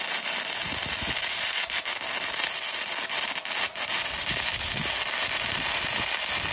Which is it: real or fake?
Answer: real